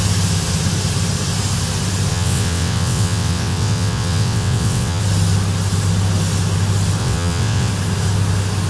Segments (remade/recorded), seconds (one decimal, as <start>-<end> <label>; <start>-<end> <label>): 0.0-2.1 recorded; 2.1-5.0 remade; 5.0-7.0 recorded; 7.0-7.7 remade; 7.7-8.7 recorded